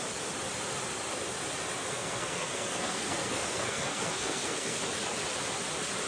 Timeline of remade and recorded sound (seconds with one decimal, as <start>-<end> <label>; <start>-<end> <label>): 0.0-1.8 recorded; 1.8-4.8 remade; 4.8-6.1 recorded